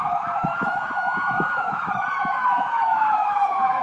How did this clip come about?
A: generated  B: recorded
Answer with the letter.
A